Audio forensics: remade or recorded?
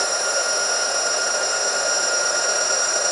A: recorded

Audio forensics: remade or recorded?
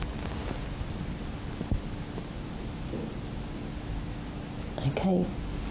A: recorded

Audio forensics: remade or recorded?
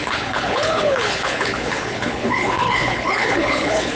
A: remade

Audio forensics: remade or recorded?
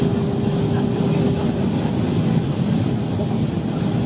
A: recorded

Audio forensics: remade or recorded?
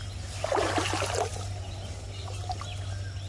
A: recorded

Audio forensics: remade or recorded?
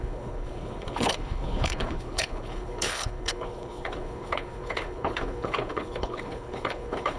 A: remade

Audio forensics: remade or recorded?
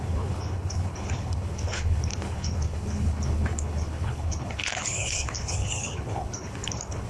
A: remade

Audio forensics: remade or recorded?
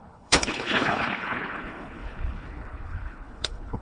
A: remade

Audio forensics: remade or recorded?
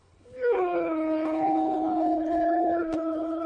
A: remade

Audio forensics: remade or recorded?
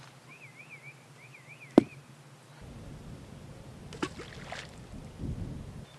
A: recorded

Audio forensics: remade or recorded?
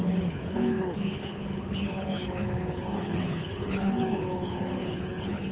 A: remade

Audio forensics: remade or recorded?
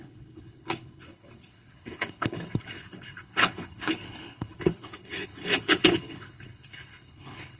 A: remade